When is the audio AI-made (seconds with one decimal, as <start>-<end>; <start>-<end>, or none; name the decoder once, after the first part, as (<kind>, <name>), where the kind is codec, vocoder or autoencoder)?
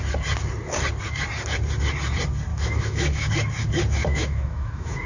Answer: 2.5-3.3 (autoencoder, DAC-VAE); 4.0-5.1